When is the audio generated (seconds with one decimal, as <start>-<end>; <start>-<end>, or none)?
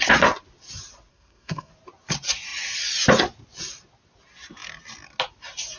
1.1-1.7